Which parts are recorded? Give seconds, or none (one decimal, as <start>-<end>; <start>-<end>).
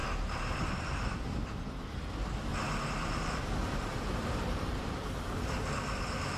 1.3-2.5